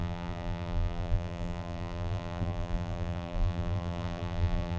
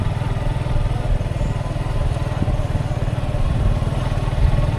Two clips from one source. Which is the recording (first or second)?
second